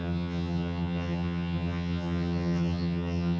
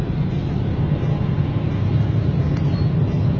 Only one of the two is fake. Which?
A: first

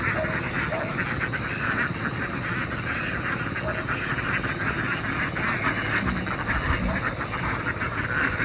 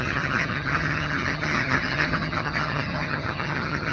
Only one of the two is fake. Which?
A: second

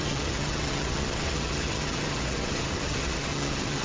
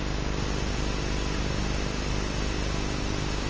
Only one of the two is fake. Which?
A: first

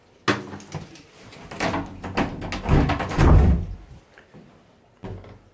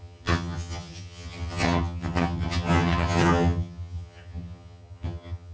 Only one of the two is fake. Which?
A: second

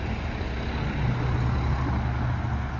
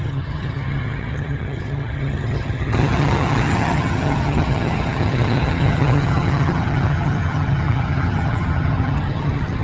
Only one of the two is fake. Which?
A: second